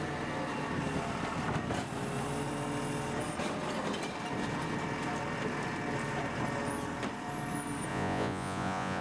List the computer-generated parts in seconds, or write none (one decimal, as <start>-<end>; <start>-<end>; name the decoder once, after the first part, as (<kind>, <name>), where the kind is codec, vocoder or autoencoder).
7.9-9.0 (vocoder, Vocos)